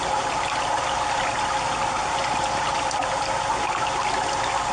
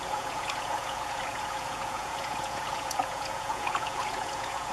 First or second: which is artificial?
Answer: second